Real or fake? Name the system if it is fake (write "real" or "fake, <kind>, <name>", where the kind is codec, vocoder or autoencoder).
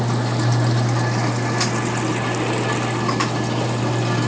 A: real